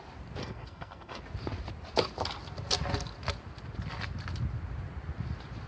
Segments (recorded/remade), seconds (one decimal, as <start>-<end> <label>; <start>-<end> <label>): 0.0-0.4 recorded; 0.4-1.2 remade; 1.2-5.7 recorded